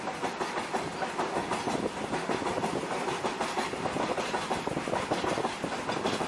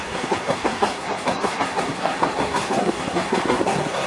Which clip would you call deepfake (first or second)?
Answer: second